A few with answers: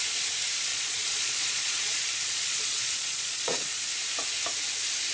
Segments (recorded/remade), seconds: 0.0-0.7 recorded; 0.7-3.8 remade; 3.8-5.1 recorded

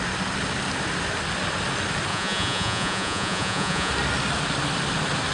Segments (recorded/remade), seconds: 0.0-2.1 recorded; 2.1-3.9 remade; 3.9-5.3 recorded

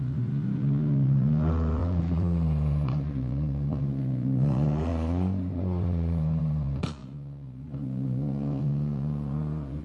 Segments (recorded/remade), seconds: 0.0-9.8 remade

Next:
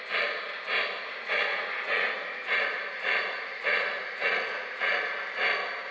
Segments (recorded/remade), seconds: 0.0-1.5 recorded; 1.5-5.0 remade; 5.0-5.9 recorded

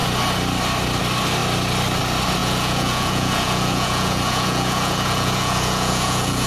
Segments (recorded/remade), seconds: 0.0-2.4 recorded; 2.4-6.5 remade

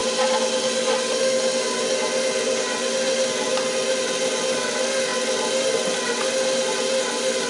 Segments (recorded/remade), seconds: 0.0-7.5 recorded

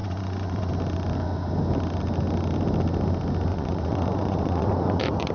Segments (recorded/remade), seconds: 0.0-0.7 remade; 0.7-3.5 recorded; 3.5-5.3 remade